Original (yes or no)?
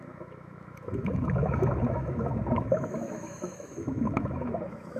no